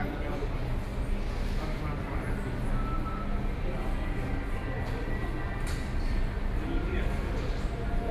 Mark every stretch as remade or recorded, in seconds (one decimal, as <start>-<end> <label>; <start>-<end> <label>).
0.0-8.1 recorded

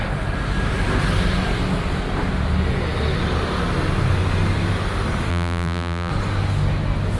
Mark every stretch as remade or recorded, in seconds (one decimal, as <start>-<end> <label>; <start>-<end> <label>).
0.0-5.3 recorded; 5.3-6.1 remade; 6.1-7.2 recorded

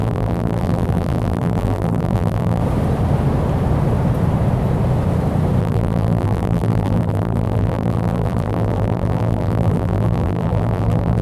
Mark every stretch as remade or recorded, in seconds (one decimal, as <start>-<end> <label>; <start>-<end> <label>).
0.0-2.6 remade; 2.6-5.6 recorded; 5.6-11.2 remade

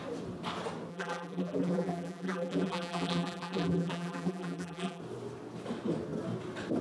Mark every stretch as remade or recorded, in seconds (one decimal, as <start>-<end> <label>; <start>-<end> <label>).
0.0-0.9 recorded; 0.9-5.0 remade; 5.0-6.8 recorded

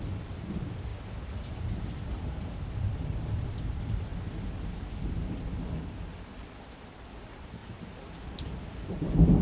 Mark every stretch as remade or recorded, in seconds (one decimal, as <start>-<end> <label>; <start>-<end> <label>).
0.0-0.9 remade; 0.9-1.5 recorded; 1.5-4.1 remade; 4.1-4.8 recorded; 4.8-9.4 remade